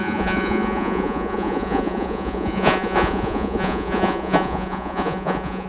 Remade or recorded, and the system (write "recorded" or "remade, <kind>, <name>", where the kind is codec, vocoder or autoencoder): remade, vocoder, Vocos